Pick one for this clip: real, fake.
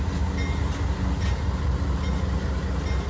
real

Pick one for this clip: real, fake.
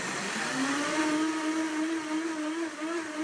real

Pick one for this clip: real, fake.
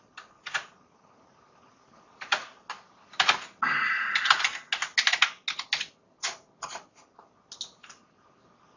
real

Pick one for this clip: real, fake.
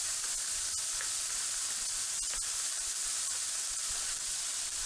fake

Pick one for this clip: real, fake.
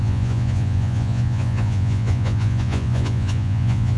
fake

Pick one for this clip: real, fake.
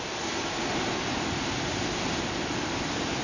real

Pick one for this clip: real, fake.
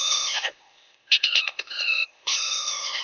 fake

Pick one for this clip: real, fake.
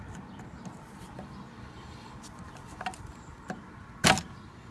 real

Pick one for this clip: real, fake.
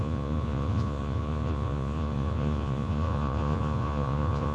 fake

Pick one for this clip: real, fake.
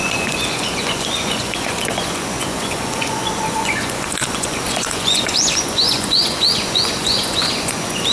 fake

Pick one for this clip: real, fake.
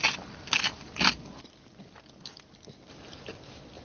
real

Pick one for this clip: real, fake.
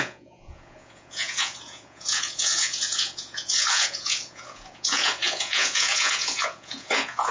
fake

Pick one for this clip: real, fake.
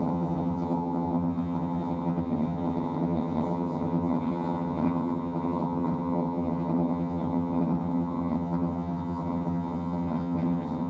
fake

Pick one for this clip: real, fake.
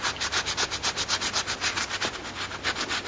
real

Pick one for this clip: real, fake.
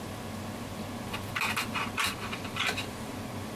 real